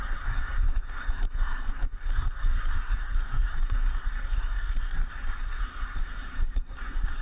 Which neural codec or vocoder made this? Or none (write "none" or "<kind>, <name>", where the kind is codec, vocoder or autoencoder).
codec, SNAC